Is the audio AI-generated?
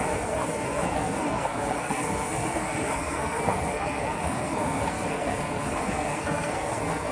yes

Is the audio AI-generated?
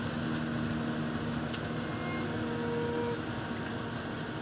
no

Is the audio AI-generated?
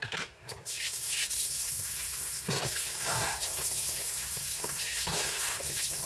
yes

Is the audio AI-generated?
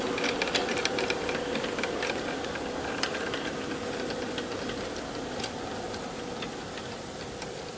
no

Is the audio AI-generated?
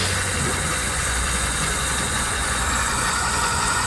yes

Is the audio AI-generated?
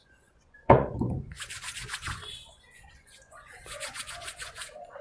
yes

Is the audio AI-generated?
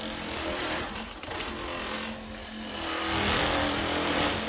no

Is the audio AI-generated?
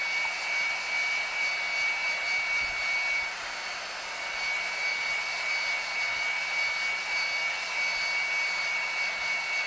no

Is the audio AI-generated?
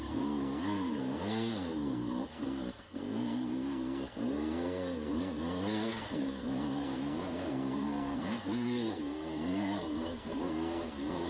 yes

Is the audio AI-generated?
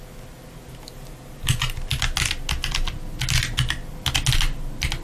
no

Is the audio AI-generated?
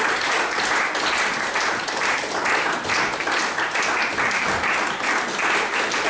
no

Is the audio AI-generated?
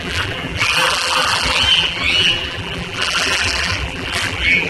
yes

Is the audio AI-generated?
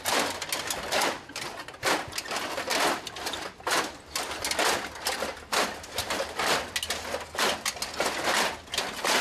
no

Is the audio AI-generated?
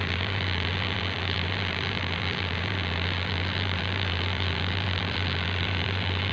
yes